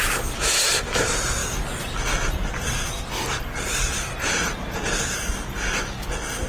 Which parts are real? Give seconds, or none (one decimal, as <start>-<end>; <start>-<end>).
0.0-6.5